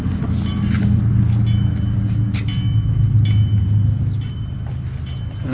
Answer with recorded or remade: recorded